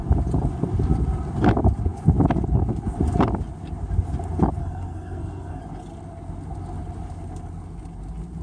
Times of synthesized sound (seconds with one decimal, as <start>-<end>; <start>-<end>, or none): 4.6-5.6